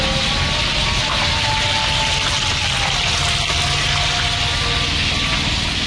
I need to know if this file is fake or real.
real